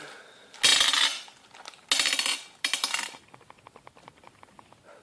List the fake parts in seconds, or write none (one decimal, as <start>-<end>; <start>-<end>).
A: none